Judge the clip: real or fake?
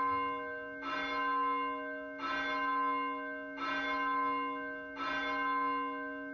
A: real